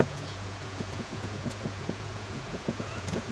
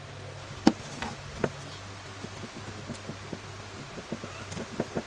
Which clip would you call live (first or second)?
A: second